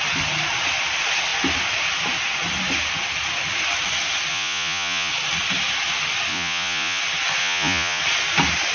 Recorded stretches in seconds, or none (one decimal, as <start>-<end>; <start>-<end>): 0.0-4.3; 5.1-6.3; 7.0-7.4; 8.0-8.7